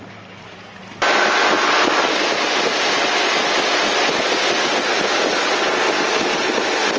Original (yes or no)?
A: yes